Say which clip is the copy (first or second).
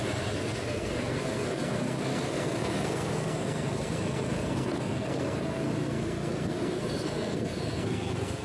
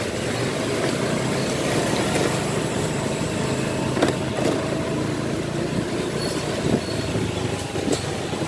first